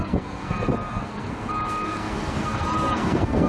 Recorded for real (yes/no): no